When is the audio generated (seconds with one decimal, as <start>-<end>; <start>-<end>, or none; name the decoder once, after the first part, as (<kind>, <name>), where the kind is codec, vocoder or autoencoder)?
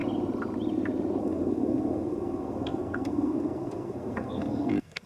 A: 1.2-5.1 (codec, SNAC)